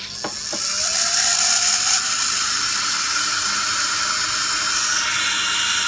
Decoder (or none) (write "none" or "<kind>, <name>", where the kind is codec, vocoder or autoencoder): none